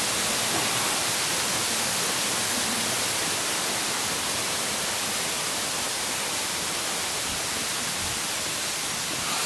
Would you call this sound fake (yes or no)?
no